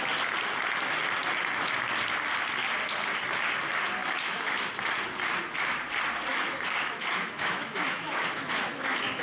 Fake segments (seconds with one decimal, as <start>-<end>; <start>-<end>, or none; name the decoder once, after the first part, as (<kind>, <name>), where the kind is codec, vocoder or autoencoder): 4.0-4.7 (autoencoder, DAC-VAE); 6.3-9.2